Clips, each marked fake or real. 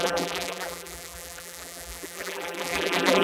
fake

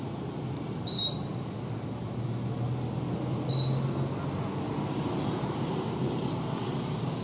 real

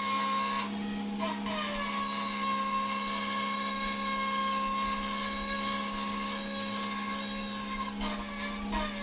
real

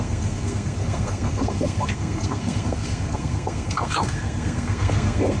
fake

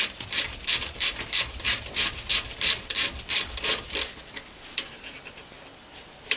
fake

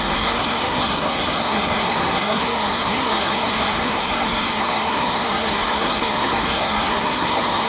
fake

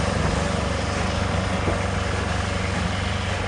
real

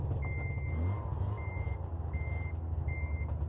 real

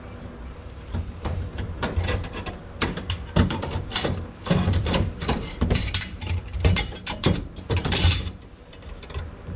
fake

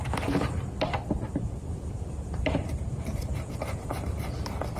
fake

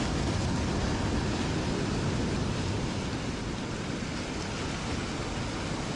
real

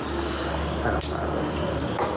real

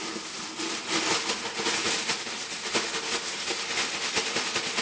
real